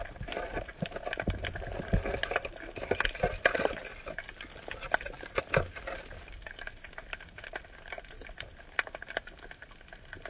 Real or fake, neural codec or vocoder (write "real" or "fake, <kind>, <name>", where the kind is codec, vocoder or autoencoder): real